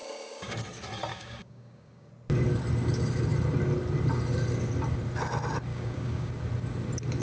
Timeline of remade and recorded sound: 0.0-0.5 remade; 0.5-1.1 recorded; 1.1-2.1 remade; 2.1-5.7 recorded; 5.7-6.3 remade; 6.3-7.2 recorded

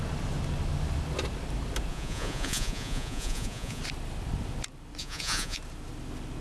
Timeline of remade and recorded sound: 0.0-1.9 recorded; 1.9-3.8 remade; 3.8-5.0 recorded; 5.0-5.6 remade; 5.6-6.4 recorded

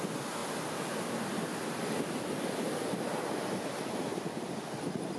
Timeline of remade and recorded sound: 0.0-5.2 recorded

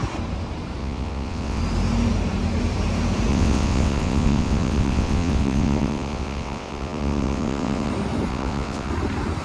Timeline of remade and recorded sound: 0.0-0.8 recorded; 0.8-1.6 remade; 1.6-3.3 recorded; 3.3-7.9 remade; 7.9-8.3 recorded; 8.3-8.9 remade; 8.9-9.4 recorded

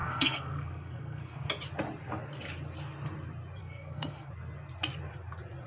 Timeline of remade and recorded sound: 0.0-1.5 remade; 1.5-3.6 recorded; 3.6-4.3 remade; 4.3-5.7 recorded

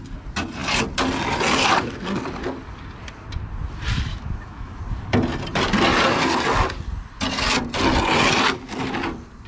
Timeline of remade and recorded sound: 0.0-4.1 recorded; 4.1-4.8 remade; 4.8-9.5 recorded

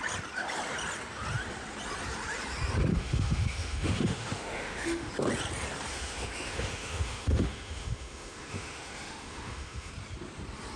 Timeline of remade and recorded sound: 0.0-2.9 recorded; 2.9-5.1 remade; 5.1-5.9 recorded; 5.9-9.9 remade; 9.9-10.8 recorded